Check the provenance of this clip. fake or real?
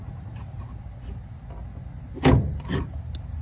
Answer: real